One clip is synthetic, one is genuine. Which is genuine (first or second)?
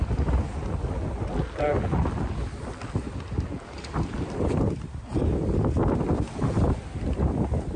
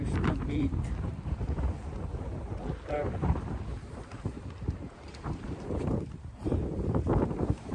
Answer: first